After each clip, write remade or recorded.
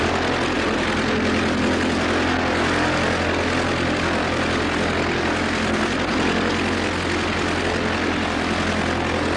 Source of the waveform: recorded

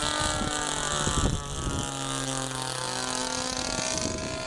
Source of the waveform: recorded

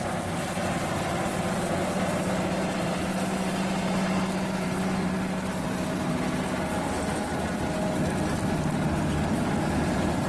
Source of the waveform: recorded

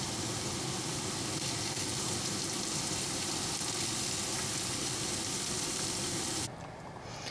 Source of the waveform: recorded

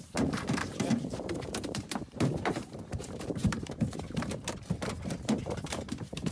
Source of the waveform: remade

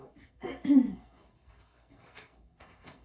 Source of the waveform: remade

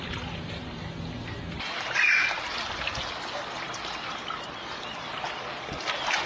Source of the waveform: recorded